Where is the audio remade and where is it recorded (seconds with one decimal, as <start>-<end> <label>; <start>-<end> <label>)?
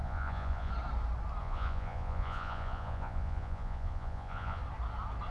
0.0-0.7 remade; 0.7-1.4 recorded; 1.4-4.6 remade; 4.6-5.3 recorded